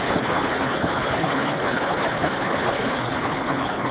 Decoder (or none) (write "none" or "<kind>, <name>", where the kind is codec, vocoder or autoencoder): codec, HILCodec